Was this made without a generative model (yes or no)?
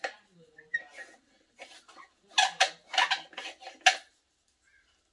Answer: yes